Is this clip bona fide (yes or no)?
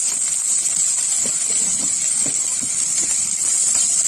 yes